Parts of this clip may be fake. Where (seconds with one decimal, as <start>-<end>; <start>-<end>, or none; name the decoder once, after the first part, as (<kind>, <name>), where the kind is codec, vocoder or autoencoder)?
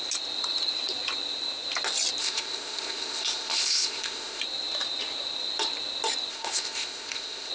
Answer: 2.2-4.4 (codec, ZipCodec); 6.3-7.5